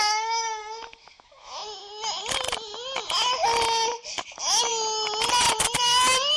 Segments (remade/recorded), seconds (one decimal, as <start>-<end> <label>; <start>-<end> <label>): 0.0-1.6 remade; 1.6-4.3 recorded; 4.3-4.7 remade; 4.7-6.4 recorded